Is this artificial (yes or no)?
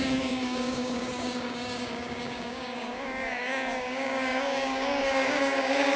yes